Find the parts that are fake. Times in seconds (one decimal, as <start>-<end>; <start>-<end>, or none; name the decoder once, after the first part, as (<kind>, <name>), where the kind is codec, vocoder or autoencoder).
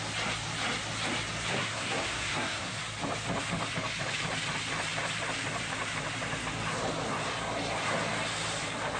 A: 1.5-2.8 (codec, SNAC)